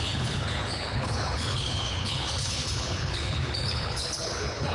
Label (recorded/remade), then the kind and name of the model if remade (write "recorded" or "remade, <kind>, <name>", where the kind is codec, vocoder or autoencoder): remade, codec, HILCodec